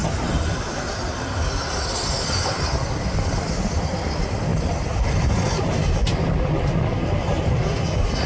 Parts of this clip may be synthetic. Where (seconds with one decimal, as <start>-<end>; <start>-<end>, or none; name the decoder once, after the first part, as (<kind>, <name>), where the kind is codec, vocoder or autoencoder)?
none